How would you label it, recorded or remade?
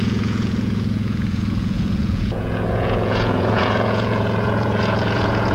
remade